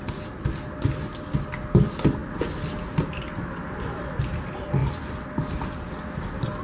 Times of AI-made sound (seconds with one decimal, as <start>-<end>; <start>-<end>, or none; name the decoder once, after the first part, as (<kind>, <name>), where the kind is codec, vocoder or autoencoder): none